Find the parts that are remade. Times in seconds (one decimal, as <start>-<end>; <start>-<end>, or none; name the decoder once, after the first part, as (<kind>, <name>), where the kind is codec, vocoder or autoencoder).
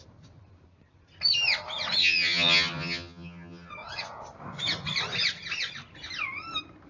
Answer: 2.0-3.7 (vocoder, HiFi-GAN)